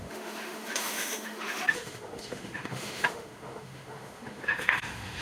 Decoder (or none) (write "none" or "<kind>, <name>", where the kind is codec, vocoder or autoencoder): autoencoder, DAC-VAE